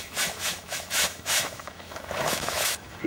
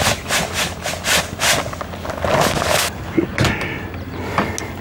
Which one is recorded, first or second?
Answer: second